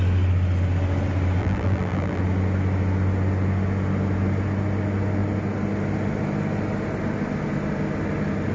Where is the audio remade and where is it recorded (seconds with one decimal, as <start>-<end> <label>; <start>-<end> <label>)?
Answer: 0.0-1.4 recorded; 1.4-2.2 remade; 2.2-8.5 recorded

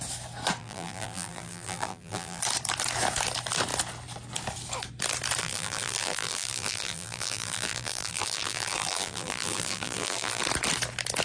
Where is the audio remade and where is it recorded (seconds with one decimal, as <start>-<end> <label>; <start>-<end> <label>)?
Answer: 0.0-0.6 recorded; 0.6-2.4 remade; 2.4-5.4 recorded; 5.4-10.4 remade; 10.4-11.2 recorded

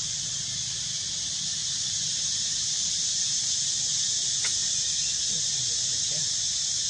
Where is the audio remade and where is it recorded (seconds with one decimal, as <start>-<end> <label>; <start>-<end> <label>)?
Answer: 0.0-1.6 recorded; 1.6-3.7 remade; 3.7-6.9 recorded

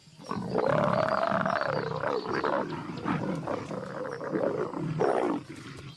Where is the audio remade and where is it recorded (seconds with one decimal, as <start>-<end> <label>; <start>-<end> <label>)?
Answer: 0.0-6.0 recorded

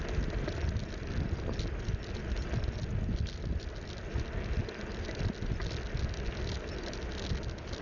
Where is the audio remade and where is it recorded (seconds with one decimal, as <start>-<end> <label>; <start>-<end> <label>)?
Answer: 0.0-7.8 recorded

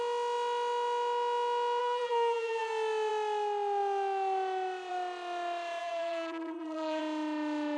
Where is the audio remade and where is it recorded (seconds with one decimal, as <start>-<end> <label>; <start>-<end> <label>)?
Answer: 0.0-1.8 recorded; 1.8-2.7 remade; 2.7-5.8 recorded; 5.8-7.0 remade; 7.0-7.8 recorded

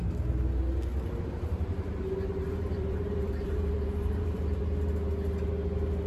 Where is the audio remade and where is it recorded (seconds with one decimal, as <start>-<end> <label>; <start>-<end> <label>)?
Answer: 0.0-0.9 recorded; 0.9-4.6 remade; 4.6-6.1 recorded